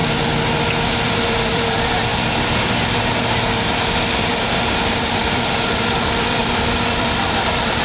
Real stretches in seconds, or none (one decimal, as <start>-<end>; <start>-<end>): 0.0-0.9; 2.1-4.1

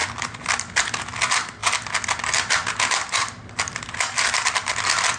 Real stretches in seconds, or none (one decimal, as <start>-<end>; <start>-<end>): 0.0-5.2

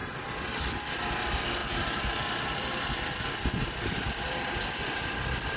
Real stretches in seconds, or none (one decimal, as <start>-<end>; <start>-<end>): 0.6-1.6; 5.0-5.6

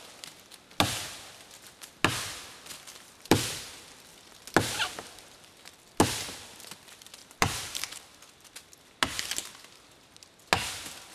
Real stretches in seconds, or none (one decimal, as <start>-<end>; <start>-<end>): 0.0-2.9; 3.6-7.2; 8.2-11.1

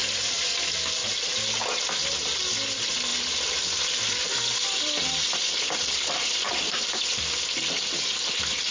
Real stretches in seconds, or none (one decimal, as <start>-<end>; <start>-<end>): 0.8-3.1; 8.0-8.7

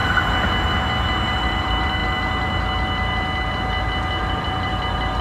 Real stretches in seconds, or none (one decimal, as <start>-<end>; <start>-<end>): 0.0-1.4; 2.0-4.3